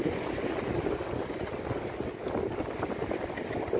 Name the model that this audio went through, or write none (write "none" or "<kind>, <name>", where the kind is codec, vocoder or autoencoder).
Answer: none